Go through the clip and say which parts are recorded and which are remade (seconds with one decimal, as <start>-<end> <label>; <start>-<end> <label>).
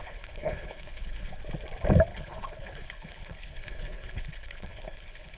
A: 0.0-1.4 remade; 1.4-2.1 recorded; 2.1-5.4 remade